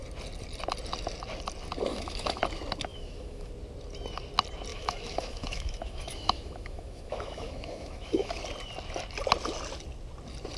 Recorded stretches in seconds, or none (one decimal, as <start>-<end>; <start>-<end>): 0.0-1.9; 2.4-2.9; 3.5-4.7; 8.3-10.6